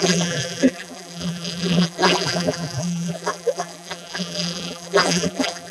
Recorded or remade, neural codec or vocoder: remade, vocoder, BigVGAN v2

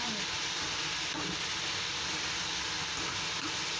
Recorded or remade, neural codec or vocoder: recorded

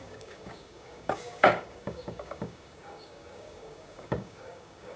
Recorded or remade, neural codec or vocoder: remade, codec, DAC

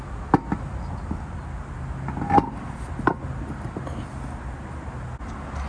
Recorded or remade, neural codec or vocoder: recorded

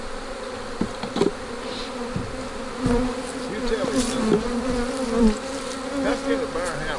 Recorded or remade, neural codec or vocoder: recorded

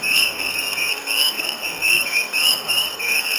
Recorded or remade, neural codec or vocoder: remade, codec, SNAC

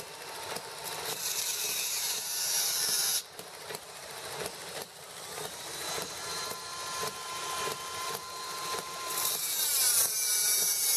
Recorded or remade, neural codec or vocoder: remade, vocoder, BigVGAN v2